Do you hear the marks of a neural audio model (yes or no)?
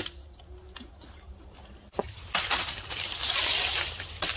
no